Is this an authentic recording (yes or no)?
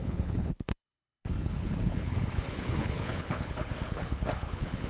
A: no